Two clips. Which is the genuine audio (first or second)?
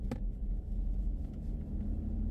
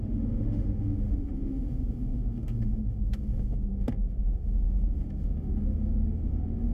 first